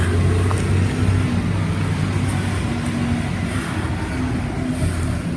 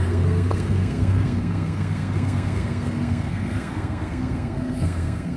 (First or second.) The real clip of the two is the first